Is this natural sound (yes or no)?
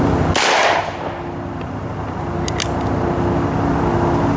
yes